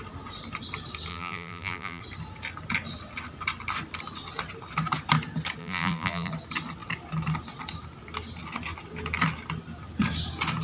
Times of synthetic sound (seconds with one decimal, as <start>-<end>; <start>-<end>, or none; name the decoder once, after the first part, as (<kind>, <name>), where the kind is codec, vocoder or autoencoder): 1.1-2.0 (vocoder, BigVGAN v2); 5.6-6.3